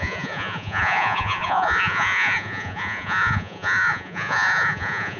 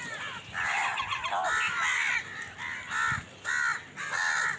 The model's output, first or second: first